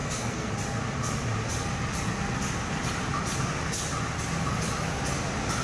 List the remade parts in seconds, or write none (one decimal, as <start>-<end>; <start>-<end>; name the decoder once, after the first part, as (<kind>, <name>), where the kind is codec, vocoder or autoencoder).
0.0-0.5 (codec, SNAC)